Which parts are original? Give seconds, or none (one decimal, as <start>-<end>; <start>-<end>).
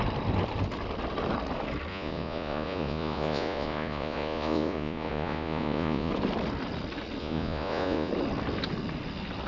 0.0-1.9; 6.1-7.2; 8.1-9.5